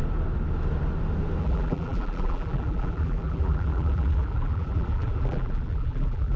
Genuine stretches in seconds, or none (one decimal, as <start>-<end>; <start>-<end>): 0.0-1.4